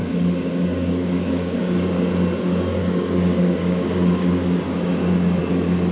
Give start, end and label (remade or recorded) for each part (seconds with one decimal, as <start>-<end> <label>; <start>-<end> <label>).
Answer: 0.0-2.1 remade; 2.1-2.8 recorded; 2.8-5.4 remade; 5.4-5.9 recorded